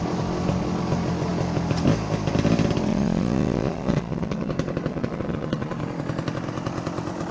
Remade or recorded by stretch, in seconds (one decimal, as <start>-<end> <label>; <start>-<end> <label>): 0.0-2.9 recorded; 2.9-4.5 remade; 4.5-4.9 recorded; 4.9-5.8 remade; 5.8-7.3 recorded